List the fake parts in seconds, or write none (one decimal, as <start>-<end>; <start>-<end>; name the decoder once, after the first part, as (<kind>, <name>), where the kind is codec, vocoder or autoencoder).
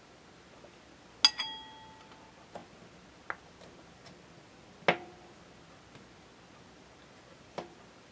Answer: none